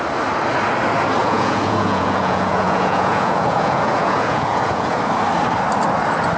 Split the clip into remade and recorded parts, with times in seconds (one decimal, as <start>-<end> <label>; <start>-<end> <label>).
0.0-1.2 recorded; 1.2-5.0 remade; 5.0-6.4 recorded